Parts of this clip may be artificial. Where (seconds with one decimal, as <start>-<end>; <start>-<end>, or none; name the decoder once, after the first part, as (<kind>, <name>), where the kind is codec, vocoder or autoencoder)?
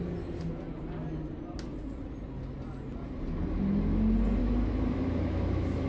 4.4-5.9 (autoencoder, DAC-VAE)